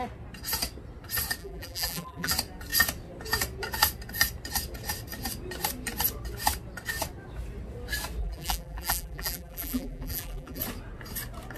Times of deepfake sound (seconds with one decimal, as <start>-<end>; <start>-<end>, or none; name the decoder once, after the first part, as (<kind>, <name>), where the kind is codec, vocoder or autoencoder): 1.4-2.3 (vocoder, BigVGAN v2); 8.2-10.6